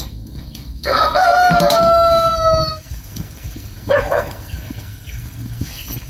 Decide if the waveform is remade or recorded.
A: remade